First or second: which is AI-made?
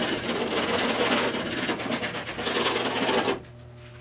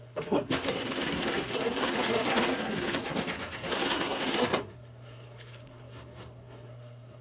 second